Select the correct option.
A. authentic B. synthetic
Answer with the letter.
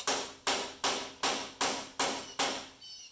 A